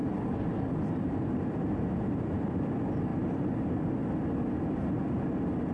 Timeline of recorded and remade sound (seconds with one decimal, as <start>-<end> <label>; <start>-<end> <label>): 0.0-2.7 remade; 2.7-3.1 recorded; 3.1-3.7 remade; 3.7-5.7 recorded